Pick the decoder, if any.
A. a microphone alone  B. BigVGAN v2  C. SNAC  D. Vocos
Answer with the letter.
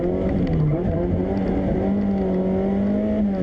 A